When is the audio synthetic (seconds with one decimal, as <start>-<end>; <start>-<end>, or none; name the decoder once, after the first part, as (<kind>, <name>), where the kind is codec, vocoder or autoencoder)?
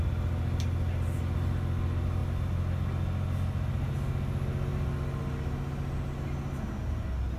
none